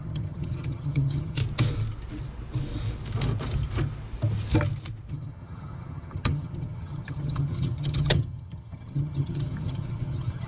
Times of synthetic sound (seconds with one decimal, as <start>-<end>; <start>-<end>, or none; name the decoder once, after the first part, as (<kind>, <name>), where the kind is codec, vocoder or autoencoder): 0.0-1.4 (vocoder, HiFi-GAN); 5.1-10.5